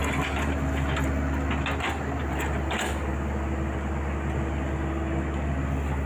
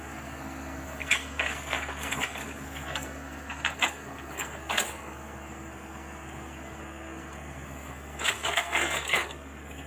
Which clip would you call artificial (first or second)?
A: second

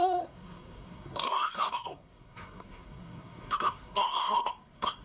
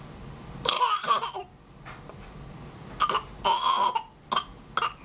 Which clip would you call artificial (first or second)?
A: first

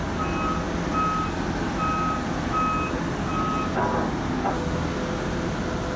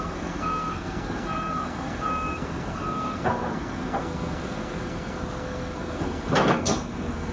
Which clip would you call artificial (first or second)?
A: second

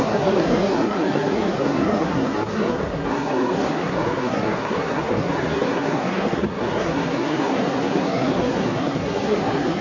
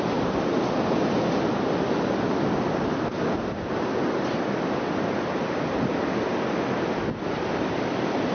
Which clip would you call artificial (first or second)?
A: first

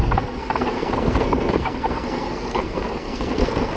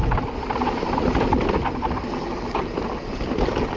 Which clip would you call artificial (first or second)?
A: first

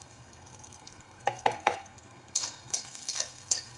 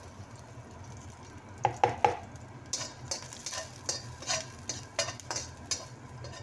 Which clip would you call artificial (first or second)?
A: first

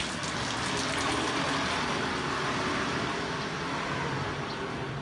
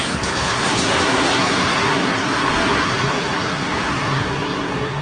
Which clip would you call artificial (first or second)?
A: second